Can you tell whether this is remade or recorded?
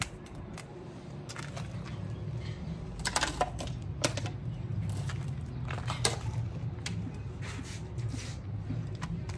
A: recorded